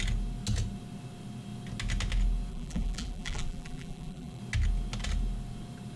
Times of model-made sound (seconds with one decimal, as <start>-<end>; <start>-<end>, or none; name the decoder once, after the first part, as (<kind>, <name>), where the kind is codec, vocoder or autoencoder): 2.5-4.4 (vocoder, BigVGAN v2)